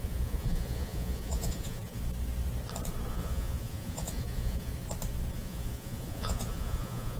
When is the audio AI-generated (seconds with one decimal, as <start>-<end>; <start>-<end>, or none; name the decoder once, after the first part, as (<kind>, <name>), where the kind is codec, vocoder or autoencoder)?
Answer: 0.0-2.0 (vocoder, Vocos); 3.1-4.7; 5.3-7.2